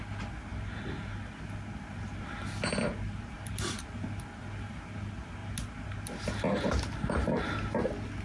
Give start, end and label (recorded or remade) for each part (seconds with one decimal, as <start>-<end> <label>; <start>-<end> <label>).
0.0-8.2 recorded